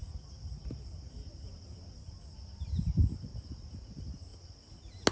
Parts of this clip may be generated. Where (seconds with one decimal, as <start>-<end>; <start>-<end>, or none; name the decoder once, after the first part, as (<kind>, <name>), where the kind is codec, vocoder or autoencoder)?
none